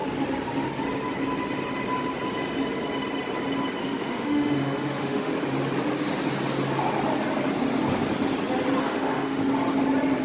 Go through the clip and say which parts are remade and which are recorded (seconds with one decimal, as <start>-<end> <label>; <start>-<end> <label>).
0.0-3.8 recorded; 3.8-5.3 remade; 5.3-8.8 recorded; 8.8-9.4 remade; 9.4-10.2 recorded